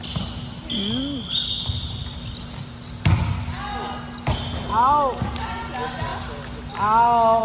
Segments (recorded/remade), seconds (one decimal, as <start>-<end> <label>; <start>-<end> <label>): 0.0-7.4 recorded